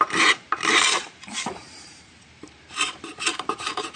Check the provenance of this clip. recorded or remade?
remade